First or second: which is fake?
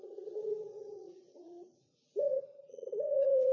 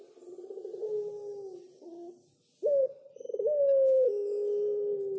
first